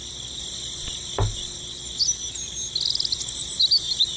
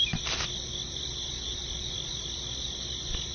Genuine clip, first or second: first